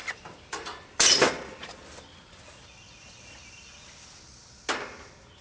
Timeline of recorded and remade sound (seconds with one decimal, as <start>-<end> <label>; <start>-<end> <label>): 0.0-1.3 remade; 1.3-5.4 recorded